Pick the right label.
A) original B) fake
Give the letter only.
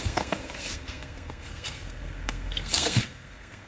B